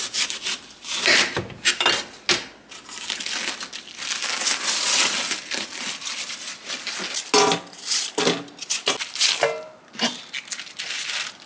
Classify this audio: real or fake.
real